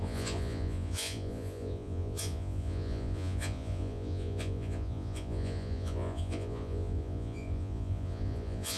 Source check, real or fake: fake